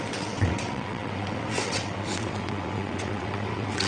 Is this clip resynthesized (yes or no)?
yes